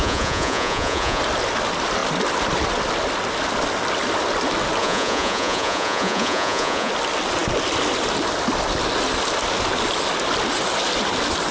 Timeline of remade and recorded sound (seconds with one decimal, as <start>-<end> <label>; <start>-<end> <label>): 0.0-1.2 remade; 1.2-4.8 recorded; 4.8-6.9 remade; 6.9-11.5 recorded

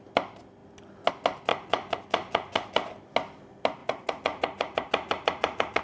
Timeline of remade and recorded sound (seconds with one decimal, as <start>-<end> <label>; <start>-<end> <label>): 0.0-1.5 recorded; 1.5-2.9 remade; 2.9-3.8 recorded; 3.8-5.8 remade

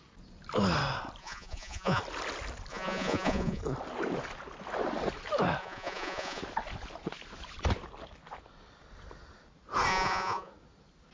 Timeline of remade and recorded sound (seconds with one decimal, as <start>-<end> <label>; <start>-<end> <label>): 0.0-1.2 recorded; 1.2-2.0 remade; 2.0-2.7 recorded; 2.7-3.6 remade; 3.6-5.6 recorded; 5.6-6.4 remade; 6.4-9.9 recorded; 9.9-10.5 remade; 10.5-11.1 recorded

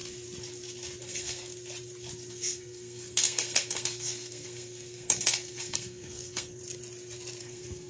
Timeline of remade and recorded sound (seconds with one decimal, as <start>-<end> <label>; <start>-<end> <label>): 0.0-1.0 recorded; 1.0-1.5 remade; 1.5-2.3 recorded; 2.3-6.6 remade; 6.6-7.4 recorded; 7.4-7.9 remade

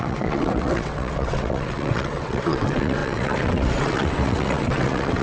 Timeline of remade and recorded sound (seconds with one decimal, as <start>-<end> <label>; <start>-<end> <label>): 0.0-5.2 remade

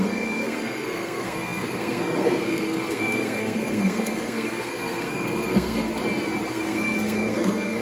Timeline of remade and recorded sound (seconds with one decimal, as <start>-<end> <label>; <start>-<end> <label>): 0.0-5.9 remade; 5.9-6.5 recorded; 6.5-7.8 remade